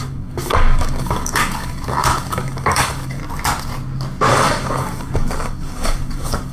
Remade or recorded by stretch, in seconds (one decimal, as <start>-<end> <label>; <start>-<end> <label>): 0.0-3.2 remade; 3.2-4.3 recorded; 4.3-6.5 remade